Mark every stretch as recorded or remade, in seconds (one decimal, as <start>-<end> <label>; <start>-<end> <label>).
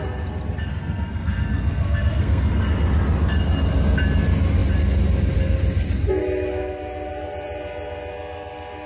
0.0-0.7 recorded; 0.7-2.6 remade; 2.6-8.9 recorded